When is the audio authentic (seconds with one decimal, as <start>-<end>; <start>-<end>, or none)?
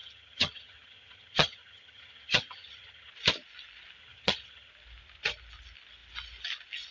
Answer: 3.1-4.0; 4.7-6.9